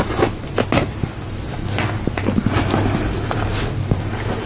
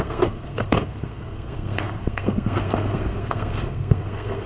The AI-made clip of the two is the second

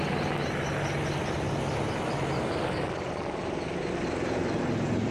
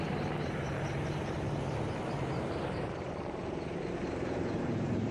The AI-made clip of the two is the second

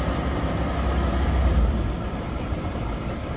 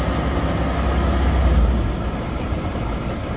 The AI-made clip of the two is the first